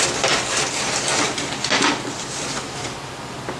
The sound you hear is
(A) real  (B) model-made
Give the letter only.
A